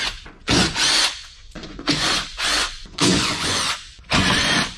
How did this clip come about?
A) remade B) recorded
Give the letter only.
A